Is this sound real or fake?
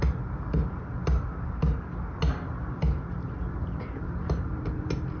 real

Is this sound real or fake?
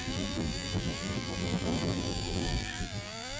fake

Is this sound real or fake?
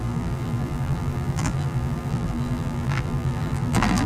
fake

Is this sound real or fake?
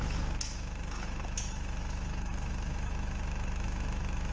fake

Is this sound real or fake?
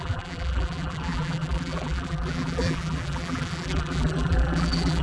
fake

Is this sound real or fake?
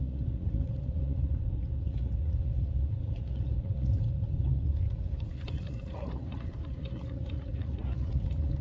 fake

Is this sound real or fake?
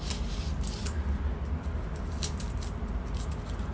real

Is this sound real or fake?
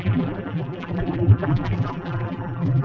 fake